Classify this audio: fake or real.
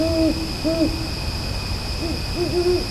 real